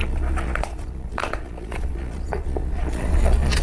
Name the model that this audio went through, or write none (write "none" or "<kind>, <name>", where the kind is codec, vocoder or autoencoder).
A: vocoder, Vocos